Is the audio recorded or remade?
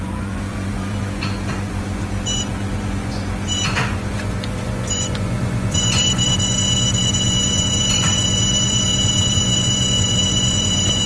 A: remade